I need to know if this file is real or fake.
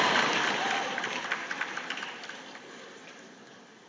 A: real